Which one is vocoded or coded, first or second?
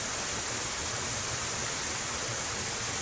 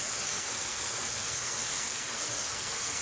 second